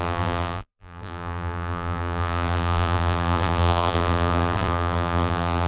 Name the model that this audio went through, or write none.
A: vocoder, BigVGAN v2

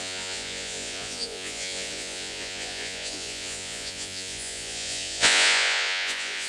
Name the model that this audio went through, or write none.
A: vocoder, Vocos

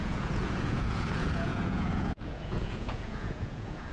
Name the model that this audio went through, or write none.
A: vocoder, Vocos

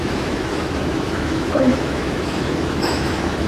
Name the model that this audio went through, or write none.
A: autoencoder, DAC-VAE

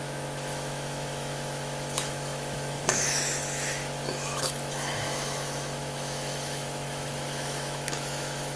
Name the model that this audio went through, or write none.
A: autoencoder, DAC-VAE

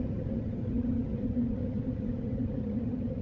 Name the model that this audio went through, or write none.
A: vocoder, HiFi-GAN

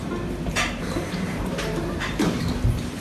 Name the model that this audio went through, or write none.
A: vocoder, BigVGAN v2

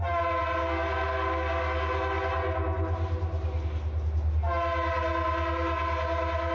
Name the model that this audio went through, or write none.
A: none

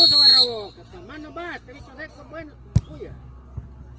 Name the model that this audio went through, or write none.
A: none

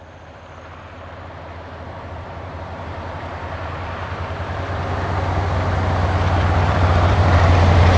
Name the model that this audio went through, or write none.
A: vocoder, BigVGAN v2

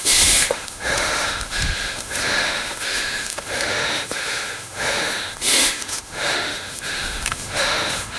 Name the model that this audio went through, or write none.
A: autoencoder, DAC-VAE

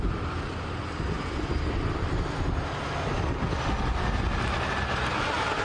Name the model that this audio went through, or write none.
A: none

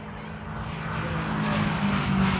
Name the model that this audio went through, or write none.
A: none